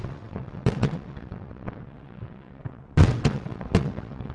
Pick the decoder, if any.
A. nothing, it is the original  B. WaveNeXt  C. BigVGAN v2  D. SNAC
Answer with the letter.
B